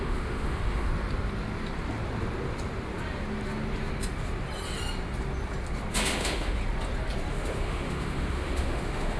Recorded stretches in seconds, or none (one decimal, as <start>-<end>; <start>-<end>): 0.9-5.9; 6.6-7.3